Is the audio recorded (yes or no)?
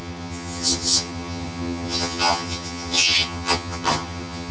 no